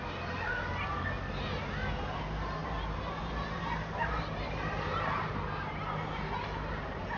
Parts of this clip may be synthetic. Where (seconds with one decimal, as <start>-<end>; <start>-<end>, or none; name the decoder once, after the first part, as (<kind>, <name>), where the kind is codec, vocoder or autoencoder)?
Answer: 2.6-5.3 (vocoder, BigVGAN v2)